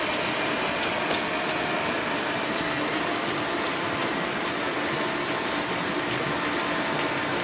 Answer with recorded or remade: recorded